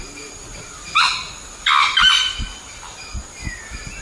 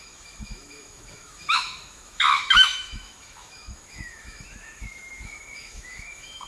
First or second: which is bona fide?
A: first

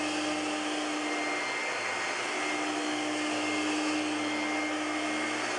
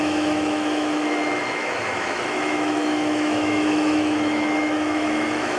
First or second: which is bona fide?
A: first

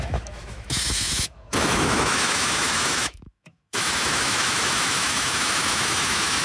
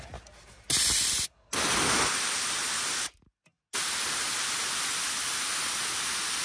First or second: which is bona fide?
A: second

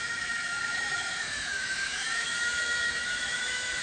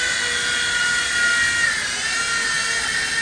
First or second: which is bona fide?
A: second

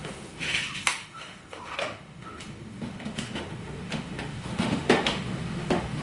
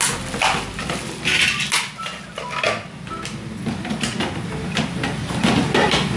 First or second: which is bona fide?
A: second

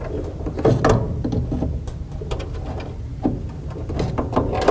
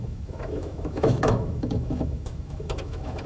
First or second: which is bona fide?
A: first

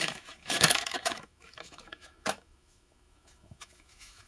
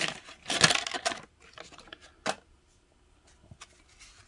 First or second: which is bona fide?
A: second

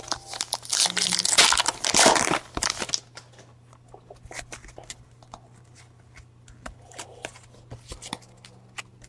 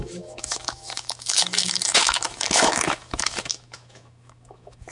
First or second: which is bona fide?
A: first